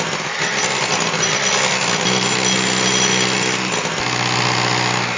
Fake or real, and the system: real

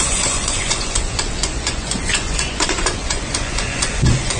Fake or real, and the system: fake, vocoder, Vocos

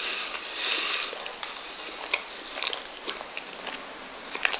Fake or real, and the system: real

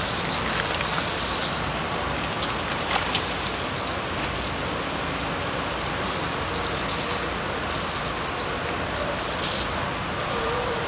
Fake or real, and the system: real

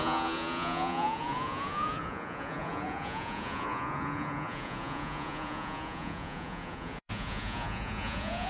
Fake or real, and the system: fake, vocoder, Vocos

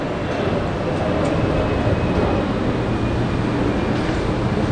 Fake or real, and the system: real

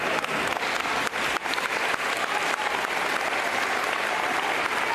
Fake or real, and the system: real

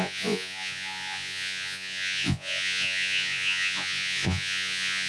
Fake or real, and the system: fake, vocoder, Vocos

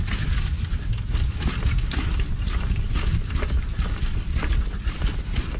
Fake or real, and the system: real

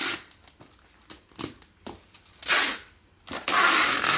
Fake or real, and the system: real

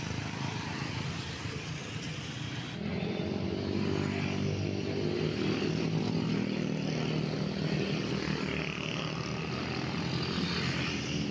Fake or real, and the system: real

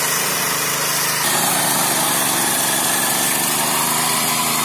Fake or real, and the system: real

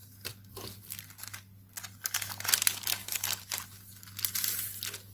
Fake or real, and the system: real